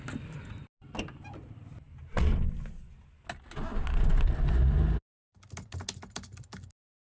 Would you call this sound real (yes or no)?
yes